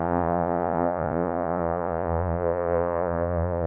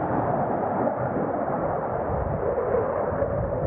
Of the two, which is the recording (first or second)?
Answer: second